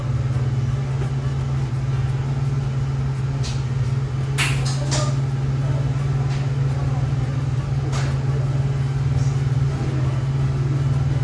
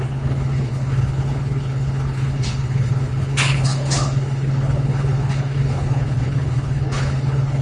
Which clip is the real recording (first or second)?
first